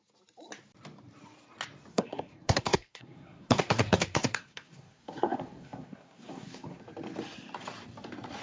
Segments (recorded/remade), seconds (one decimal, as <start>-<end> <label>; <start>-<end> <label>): 0.0-1.9 recorded; 1.9-6.8 remade; 6.8-8.4 recorded